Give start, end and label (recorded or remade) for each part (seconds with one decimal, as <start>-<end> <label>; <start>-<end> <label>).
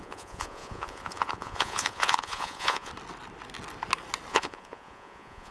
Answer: 0.0-2.9 remade; 2.9-4.3 recorded; 4.3-5.5 remade